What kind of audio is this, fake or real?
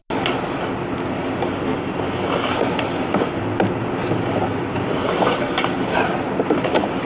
real